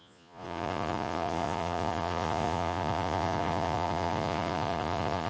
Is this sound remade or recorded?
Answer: remade